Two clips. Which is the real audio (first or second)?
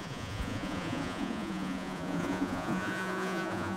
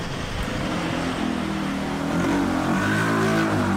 second